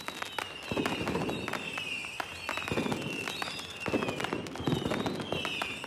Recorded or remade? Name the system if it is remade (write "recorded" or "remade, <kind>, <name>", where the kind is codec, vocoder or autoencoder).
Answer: recorded